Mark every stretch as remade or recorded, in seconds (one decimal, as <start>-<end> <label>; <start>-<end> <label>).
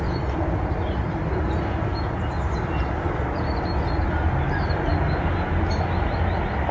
0.0-6.7 recorded